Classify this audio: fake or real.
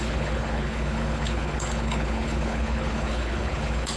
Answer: fake